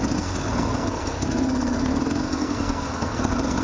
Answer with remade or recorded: remade